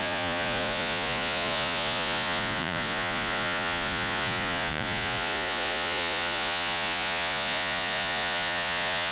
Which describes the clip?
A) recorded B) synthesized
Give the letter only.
B